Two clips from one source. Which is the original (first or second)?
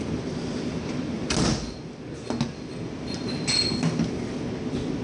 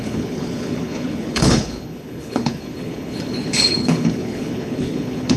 first